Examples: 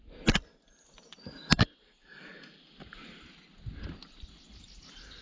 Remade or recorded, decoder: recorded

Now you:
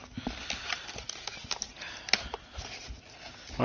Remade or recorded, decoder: recorded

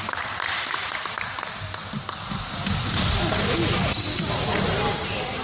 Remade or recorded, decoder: remade, vocoder, BigVGAN v2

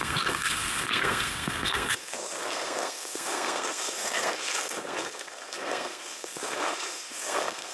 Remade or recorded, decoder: remade, codec, SNAC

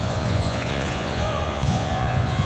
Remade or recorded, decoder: remade, vocoder, Vocos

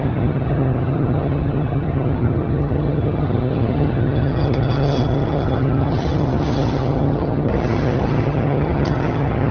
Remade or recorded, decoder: remade, vocoder, HiFi-GAN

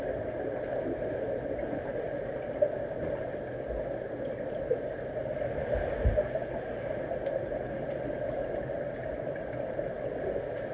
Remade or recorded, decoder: recorded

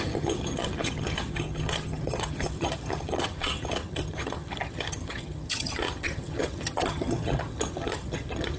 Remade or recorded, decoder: remade, vocoder, HiFi-GAN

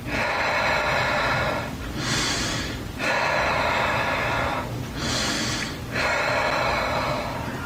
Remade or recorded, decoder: recorded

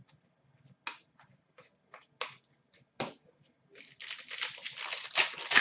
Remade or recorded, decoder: recorded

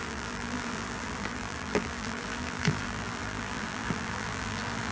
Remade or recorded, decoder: remade, vocoder, BigVGAN v2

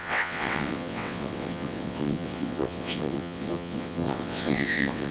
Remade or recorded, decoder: remade, vocoder, WaveNeXt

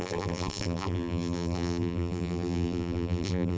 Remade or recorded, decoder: remade, vocoder, BigVGAN v2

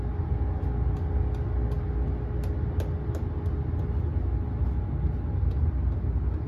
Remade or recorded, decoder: recorded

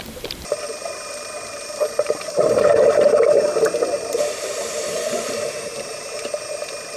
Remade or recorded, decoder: remade, vocoder, BigVGAN v2